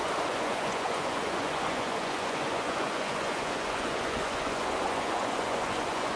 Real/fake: fake